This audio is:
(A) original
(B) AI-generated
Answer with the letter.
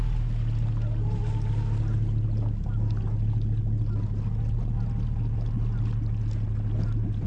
A